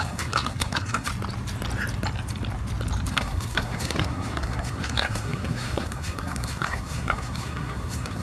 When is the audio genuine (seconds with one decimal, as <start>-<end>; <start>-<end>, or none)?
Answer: 1.1-3.1